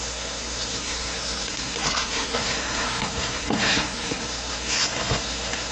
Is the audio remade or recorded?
remade